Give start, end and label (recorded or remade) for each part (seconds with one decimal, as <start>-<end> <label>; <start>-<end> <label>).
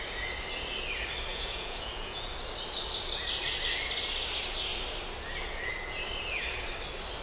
0.0-1.3 recorded; 1.3-2.3 remade; 2.3-7.2 recorded